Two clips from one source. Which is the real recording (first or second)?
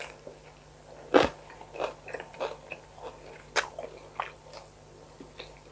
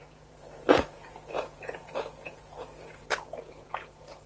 first